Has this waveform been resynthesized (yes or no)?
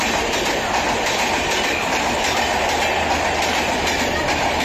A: no